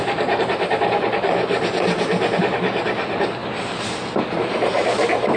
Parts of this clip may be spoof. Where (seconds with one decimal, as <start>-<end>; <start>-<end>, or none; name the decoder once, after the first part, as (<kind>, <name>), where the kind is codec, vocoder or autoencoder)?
0.0-5.4 (vocoder, BigVGAN v2)